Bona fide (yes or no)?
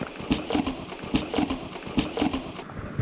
yes